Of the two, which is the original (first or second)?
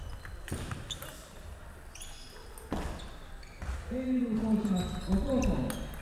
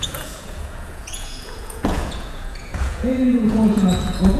first